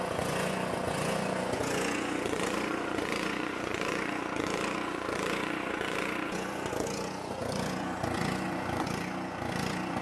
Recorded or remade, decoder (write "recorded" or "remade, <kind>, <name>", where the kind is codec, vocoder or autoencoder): remade, vocoder, Vocos